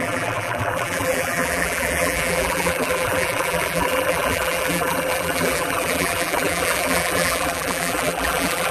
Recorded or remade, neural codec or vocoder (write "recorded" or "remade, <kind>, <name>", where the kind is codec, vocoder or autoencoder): remade, vocoder, BigVGAN v2